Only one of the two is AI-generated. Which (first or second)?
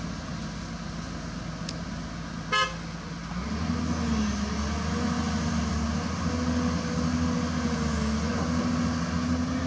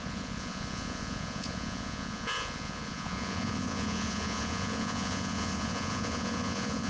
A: second